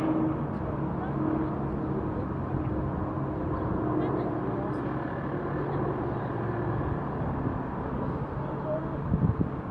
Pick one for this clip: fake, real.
real